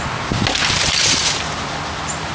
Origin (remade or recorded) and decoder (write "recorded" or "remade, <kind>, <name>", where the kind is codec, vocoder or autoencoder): recorded